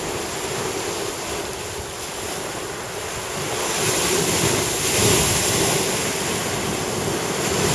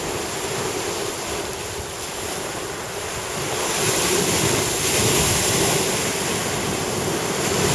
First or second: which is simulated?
second